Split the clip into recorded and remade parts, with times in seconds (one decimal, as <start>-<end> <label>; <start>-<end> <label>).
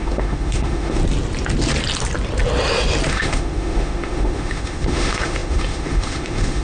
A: 0.0-1.0 remade; 1.0-3.1 recorded; 3.1-6.6 remade